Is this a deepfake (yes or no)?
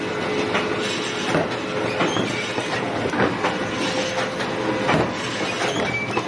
no